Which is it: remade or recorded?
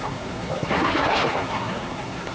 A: remade